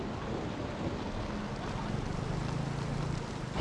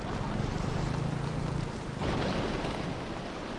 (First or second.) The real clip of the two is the first